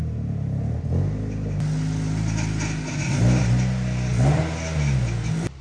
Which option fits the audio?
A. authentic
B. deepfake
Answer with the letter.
A